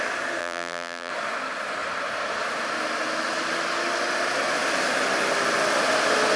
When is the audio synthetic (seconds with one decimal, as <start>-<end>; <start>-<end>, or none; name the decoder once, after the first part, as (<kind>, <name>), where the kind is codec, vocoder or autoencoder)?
0.4-1.1 (vocoder, BigVGAN v2)